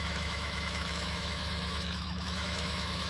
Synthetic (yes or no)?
yes